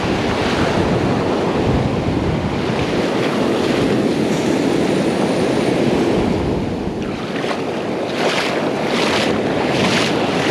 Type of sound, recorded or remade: recorded